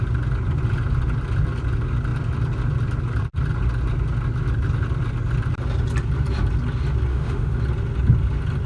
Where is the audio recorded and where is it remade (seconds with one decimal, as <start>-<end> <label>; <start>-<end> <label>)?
0.0-7.1 recorded; 7.1-7.6 remade; 7.6-8.7 recorded